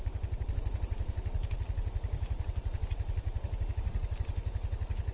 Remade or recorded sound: recorded